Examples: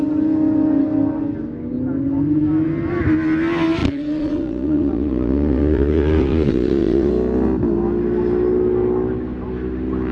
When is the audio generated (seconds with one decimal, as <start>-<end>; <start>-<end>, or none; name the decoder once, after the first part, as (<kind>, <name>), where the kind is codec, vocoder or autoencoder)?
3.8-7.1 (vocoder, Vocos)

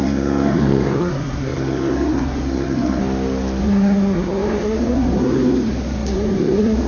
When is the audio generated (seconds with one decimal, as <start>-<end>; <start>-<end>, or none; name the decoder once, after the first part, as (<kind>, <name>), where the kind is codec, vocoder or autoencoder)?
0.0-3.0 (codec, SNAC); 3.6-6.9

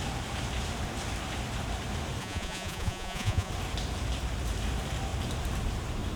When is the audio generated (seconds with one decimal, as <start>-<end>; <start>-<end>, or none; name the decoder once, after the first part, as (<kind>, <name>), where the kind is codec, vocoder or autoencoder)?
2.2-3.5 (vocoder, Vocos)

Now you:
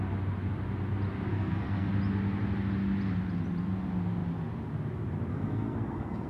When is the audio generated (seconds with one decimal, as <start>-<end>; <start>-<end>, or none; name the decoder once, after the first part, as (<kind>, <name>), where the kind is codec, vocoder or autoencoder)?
1.3-1.9 (codec, SNAC); 5.3-6.3

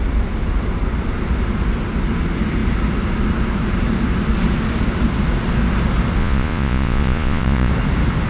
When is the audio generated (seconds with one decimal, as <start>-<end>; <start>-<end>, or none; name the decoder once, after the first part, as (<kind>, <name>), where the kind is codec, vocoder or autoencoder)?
6.2-7.7 (vocoder, Vocos)